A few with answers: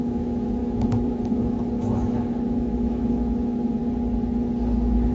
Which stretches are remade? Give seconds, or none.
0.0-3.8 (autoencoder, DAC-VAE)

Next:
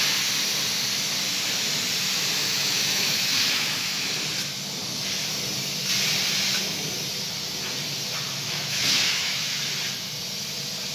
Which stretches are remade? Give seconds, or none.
2.4-4.1 (autoencoder, DAC-VAE); 8.4-9.6

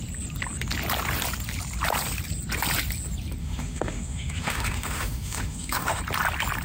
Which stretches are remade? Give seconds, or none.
3.4-6.0 (autoencoder, DAC-VAE)

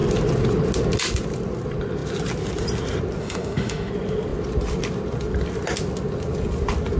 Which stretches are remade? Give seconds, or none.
3.2-3.9 (autoencoder, DAC-VAE)

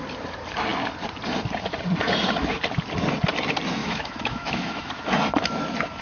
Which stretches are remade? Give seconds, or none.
3.8-4.9 (autoencoder, DAC-VAE)

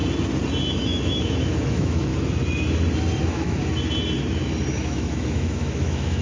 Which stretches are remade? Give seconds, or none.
0.7-2.1 (autoencoder, DAC-VAE); 3.2-3.6; 4.7-6.2

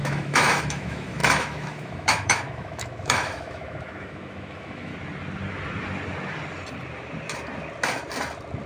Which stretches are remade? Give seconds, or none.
0.0-4.9 (autoencoder, DAC-VAE)

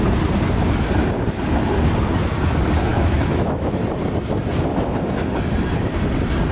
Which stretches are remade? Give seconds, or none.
2.9-3.8 (autoencoder, DAC-VAE)